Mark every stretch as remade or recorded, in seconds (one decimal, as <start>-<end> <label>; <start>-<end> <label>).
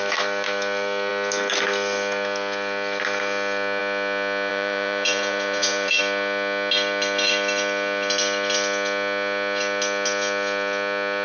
0.0-4.5 recorded; 4.5-6.0 remade; 6.0-11.2 recorded